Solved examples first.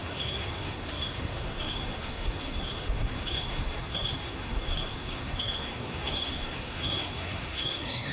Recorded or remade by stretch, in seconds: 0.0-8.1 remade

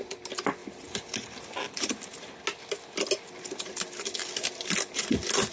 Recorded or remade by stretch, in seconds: 0.0-5.5 recorded

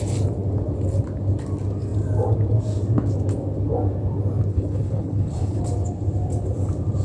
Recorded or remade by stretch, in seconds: 0.0-4.5 recorded; 4.5-5.6 remade; 5.6-7.0 recorded